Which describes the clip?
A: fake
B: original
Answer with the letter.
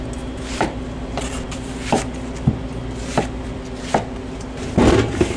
B